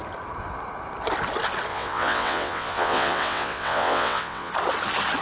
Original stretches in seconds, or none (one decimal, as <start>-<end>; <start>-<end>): 0.0-1.7; 4.5-5.2